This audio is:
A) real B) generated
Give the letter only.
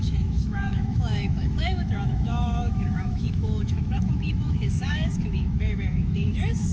B